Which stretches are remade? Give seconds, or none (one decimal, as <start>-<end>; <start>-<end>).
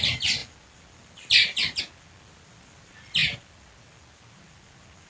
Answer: none